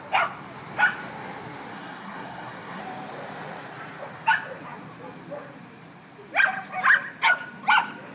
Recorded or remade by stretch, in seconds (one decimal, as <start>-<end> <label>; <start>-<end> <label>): 0.0-1.7 recorded; 1.7-2.8 remade; 2.8-8.1 recorded